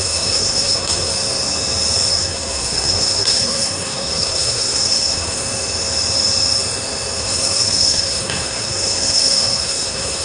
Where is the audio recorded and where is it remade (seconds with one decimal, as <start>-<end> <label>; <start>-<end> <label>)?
0.0-1.1 remade; 1.1-2.1 recorded; 2.1-5.4 remade; 5.4-7.2 recorded; 7.2-10.2 remade